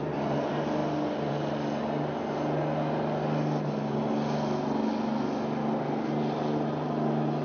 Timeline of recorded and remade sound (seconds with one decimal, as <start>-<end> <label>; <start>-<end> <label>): 0.0-7.4 recorded